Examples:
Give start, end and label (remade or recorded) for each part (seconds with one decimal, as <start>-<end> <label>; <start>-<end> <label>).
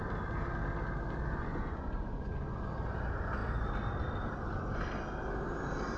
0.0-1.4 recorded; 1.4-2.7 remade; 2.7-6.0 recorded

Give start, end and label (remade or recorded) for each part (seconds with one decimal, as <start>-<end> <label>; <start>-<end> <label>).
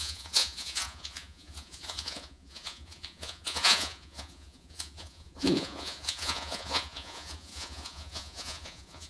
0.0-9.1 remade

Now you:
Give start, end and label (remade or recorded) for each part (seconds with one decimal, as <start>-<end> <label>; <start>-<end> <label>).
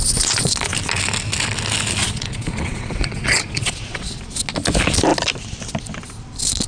0.0-2.0 recorded; 2.0-4.1 remade; 4.1-6.7 recorded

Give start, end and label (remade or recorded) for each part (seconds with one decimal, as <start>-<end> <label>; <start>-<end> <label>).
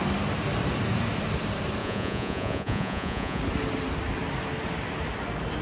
0.0-1.8 recorded; 1.8-3.4 remade; 3.4-5.6 recorded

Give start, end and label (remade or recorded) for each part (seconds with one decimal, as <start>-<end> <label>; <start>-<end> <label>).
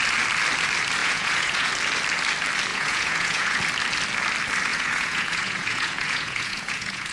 0.0-1.0 recorded; 1.0-1.7 remade; 1.7-2.7 recorded; 2.7-3.6 remade; 3.6-4.7 recorded; 4.7-7.1 remade